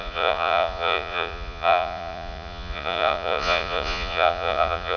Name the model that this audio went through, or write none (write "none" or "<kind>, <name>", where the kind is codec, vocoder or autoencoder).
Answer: vocoder, Vocos